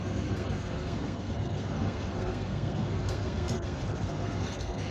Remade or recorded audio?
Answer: remade